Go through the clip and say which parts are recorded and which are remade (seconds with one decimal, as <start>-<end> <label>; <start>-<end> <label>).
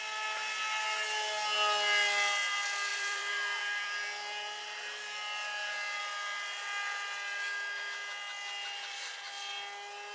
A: 0.0-2.9 recorded; 2.9-6.0 remade; 6.0-10.1 recorded